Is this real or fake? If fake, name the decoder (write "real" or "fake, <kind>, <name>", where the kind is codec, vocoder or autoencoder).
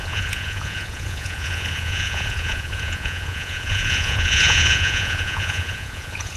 fake, vocoder, Vocos